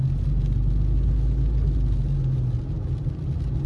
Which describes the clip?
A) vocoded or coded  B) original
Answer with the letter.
B